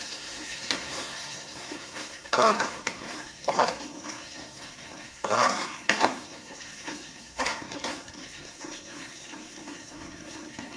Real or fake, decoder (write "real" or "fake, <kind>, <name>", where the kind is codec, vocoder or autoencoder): fake, codec, SNAC